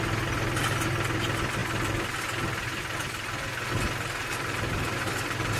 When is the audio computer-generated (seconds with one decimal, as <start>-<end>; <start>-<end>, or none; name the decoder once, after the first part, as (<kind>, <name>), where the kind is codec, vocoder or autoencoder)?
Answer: 4.2-5.6 (vocoder, BigVGAN v2)